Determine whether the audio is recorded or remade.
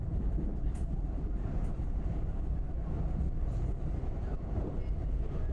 remade